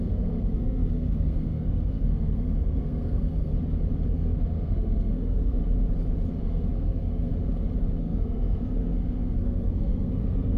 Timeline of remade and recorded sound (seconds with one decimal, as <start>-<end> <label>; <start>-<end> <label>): 0.0-3.5 remade; 3.5-4.1 recorded; 4.1-5.6 remade; 5.6-6.4 recorded; 6.4-7.3 remade; 7.3-8.0 recorded; 8.0-10.6 remade